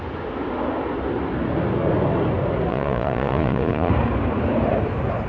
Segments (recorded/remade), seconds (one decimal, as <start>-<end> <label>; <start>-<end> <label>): 0.0-2.7 recorded; 2.7-3.9 remade; 3.9-5.3 recorded